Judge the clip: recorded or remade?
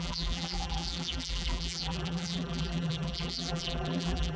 remade